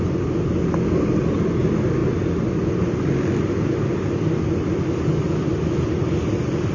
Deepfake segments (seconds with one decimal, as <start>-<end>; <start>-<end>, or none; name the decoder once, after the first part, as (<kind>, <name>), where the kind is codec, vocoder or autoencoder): none